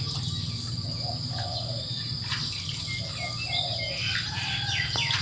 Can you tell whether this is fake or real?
real